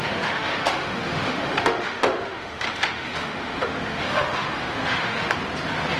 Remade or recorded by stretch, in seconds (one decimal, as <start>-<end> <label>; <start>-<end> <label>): 0.0-5.4 remade; 5.4-6.0 recorded